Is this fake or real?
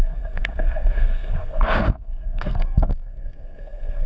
fake